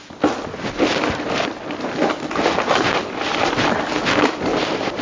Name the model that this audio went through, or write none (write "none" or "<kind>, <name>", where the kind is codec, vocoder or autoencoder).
none